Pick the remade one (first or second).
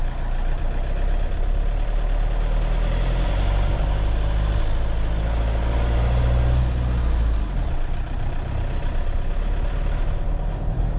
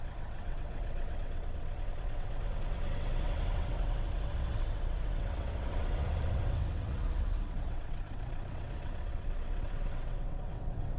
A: second